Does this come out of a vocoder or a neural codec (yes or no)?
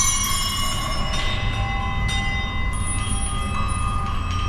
no